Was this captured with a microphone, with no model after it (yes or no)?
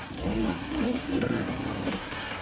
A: no